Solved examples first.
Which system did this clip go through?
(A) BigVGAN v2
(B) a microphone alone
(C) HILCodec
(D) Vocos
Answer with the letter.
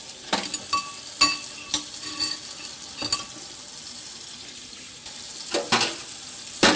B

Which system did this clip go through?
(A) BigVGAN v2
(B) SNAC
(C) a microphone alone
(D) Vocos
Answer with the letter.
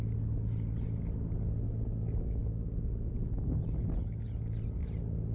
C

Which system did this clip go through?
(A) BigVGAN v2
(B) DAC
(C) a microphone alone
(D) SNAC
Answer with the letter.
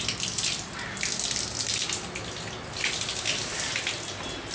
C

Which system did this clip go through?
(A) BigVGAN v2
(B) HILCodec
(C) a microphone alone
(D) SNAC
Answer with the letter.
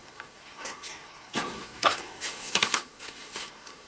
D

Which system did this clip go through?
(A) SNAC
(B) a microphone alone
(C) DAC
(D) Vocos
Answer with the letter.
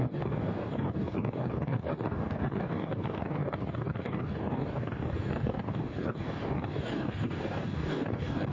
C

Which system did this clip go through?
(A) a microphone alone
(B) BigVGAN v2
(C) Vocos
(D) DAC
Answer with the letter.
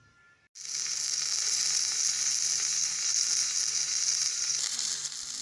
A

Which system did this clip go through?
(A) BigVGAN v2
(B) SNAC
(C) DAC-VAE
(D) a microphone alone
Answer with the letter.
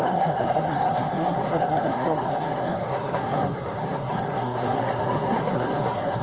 B